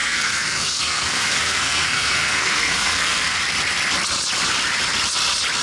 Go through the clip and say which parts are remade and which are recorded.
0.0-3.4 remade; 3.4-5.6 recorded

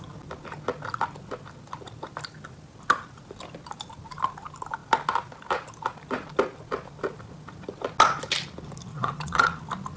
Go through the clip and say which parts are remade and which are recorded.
0.0-8.9 recorded; 8.9-9.6 remade; 9.6-10.0 recorded

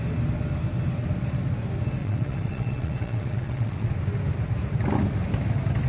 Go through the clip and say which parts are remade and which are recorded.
0.0-2.0 recorded; 2.0-3.9 remade; 3.9-5.9 recorded

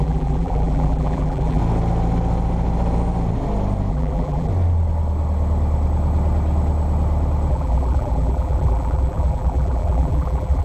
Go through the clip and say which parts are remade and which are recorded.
0.0-1.6 remade; 1.6-3.9 recorded; 3.9-4.5 remade; 4.5-7.5 recorded; 7.5-10.6 remade

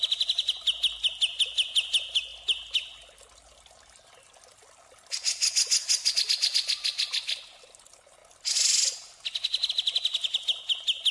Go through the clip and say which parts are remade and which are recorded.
0.0-11.1 recorded

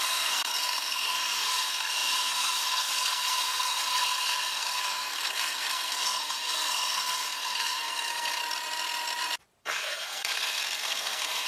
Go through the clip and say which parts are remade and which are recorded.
0.0-8.4 remade; 8.4-9.6 recorded; 9.6-11.5 remade